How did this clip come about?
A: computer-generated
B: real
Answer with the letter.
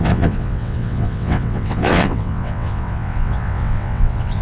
A